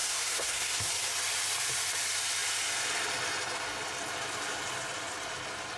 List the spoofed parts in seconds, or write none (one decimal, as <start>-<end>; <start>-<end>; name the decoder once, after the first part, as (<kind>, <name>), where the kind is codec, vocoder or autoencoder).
0.0-0.9 (codec, SNAC)